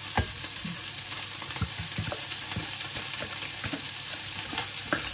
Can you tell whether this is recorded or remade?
recorded